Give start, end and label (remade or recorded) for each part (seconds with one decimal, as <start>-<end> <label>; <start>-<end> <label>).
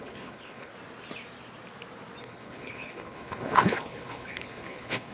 0.0-0.7 remade; 0.7-2.2 recorded; 2.2-5.1 remade